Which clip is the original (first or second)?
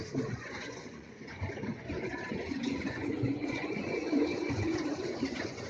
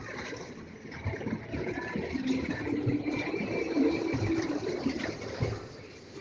second